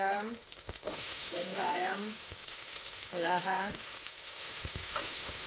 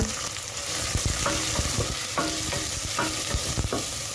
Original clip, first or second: second